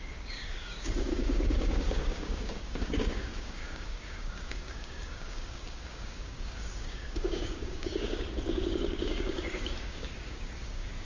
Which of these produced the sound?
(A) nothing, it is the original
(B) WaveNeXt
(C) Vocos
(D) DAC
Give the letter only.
D